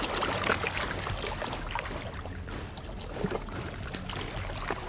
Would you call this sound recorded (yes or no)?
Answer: yes